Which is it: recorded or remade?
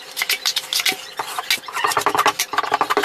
recorded